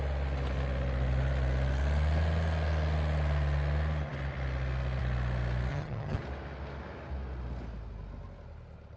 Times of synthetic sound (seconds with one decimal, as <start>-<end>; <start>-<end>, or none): 5.7-6.2